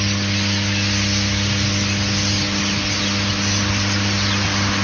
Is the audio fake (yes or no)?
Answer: no